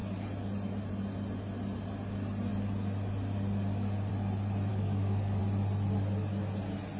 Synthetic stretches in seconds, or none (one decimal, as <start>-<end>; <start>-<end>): 4.7-5.4